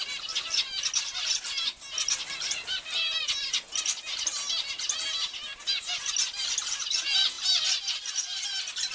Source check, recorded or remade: recorded